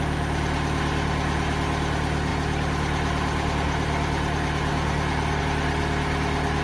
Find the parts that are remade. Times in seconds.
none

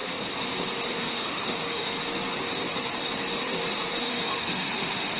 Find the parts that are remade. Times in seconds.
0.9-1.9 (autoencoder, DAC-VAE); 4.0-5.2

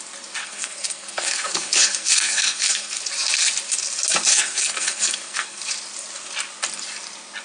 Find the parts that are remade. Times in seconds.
0.4-3.0 (codec, SNAC); 4.3-5.6